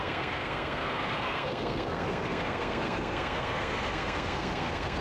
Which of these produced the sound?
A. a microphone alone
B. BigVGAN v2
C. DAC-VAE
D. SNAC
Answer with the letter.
D